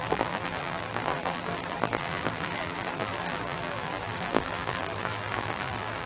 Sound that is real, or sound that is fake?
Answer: fake